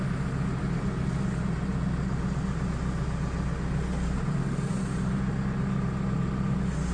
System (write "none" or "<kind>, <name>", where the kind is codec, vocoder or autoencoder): none